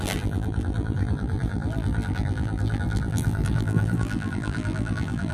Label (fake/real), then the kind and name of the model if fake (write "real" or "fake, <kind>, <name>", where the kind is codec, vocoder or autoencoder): fake, vocoder, BigVGAN v2